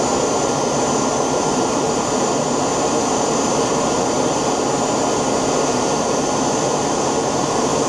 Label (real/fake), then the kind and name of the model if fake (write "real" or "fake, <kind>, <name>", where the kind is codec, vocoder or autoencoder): fake, vocoder, BigVGAN v2